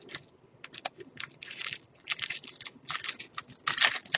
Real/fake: real